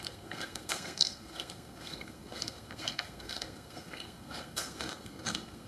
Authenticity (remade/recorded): remade